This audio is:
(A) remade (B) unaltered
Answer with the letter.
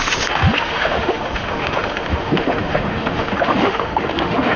A